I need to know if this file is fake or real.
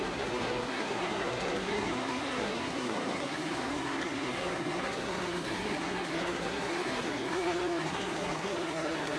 fake